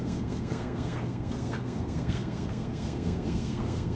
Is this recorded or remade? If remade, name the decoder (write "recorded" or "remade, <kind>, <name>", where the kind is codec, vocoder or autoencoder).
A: remade, codec, SNAC